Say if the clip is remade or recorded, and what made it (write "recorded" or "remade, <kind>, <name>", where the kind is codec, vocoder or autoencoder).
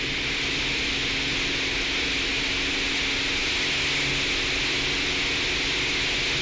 recorded